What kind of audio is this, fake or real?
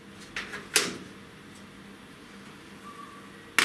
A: real